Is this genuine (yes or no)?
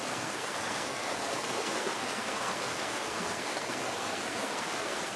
no